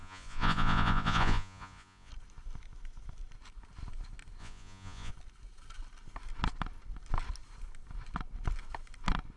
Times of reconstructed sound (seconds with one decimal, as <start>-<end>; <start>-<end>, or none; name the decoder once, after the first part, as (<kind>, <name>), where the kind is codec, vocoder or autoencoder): 0.0-2.1 (vocoder, Vocos); 4.4-5.1